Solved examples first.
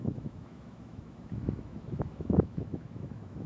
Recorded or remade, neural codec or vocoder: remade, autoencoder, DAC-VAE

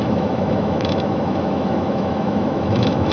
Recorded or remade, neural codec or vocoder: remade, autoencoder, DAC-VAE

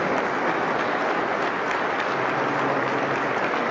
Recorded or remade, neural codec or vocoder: recorded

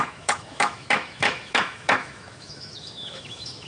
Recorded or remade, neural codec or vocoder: remade, autoencoder, DAC-VAE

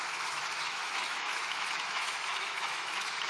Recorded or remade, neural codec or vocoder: remade, autoencoder, DAC-VAE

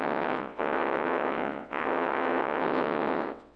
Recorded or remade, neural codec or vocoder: remade, vocoder, WaveNeXt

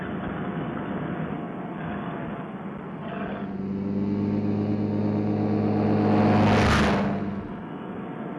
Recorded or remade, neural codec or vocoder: recorded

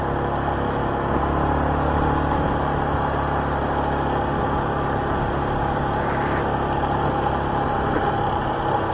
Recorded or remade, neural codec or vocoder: recorded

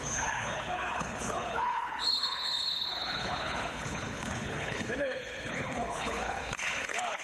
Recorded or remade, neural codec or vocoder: remade, codec, HILCodec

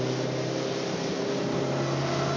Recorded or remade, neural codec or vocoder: recorded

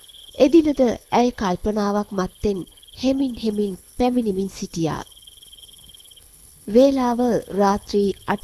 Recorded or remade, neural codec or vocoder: remade, codec, HILCodec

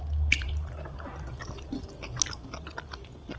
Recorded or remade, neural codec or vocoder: recorded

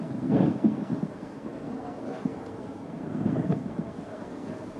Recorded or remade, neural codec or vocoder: remade, codec, SNAC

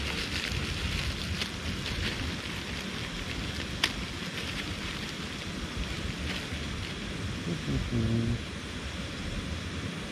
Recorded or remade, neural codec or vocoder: recorded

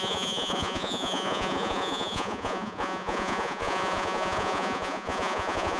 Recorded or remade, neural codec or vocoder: remade, vocoder, Vocos